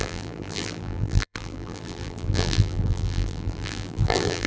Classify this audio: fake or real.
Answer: fake